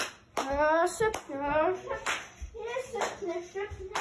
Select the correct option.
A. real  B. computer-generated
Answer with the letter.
A